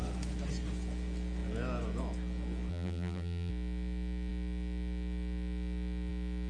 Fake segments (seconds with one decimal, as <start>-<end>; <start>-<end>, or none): 2.7-3.5